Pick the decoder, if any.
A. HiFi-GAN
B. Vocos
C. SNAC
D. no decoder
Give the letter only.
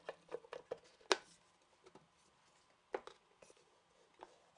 D